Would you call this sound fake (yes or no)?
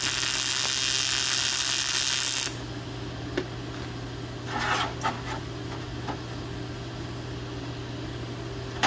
no